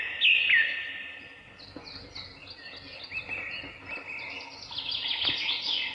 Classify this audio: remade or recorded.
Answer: recorded